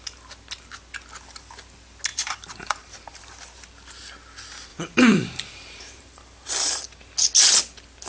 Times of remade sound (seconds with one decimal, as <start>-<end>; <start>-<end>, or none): 2.1-3.2; 4.7-6.5